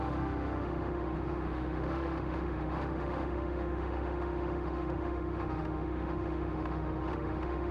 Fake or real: fake